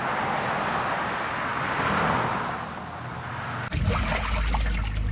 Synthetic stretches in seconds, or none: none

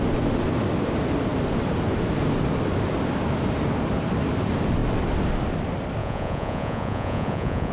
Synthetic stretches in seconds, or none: 6.0-7.7 (vocoder, Vocos)

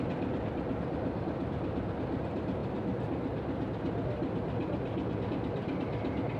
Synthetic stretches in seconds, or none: none

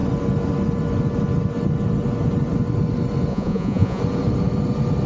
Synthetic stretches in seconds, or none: 3.3-4.0 (vocoder, Vocos)